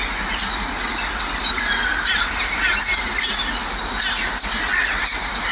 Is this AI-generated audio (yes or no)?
no